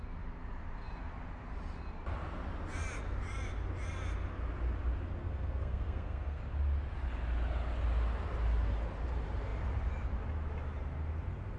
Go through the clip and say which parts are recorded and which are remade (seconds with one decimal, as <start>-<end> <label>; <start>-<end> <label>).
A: 0.0-5.2 recorded; 5.2-6.4 remade; 6.4-11.6 recorded